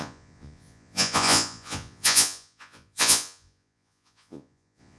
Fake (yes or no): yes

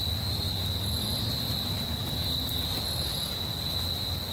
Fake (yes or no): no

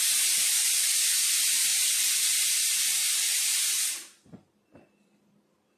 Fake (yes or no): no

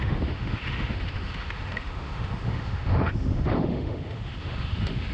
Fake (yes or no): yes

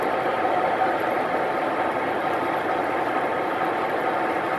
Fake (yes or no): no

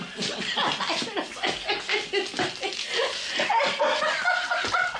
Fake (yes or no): no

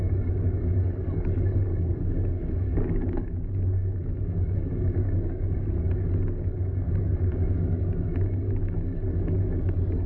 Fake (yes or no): yes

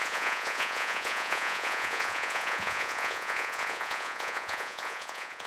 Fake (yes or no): yes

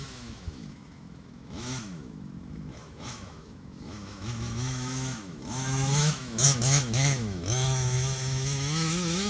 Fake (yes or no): yes